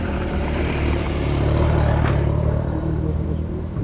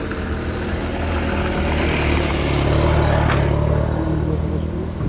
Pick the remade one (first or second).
first